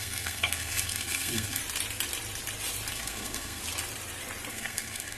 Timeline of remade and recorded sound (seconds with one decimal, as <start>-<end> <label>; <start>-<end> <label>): 0.0-1.6 remade; 1.6-2.9 recorded; 2.9-3.6 remade; 3.6-4.5 recorded; 4.5-5.2 remade